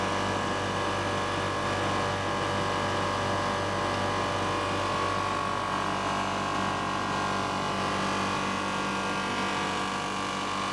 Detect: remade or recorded recorded